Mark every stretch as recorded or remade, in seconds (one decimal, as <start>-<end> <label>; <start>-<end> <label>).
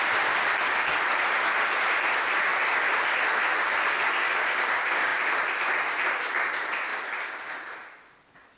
0.0-8.6 recorded